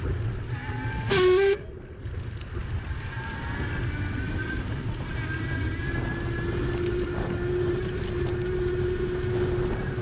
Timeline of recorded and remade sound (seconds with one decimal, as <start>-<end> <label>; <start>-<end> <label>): 0.0-10.0 recorded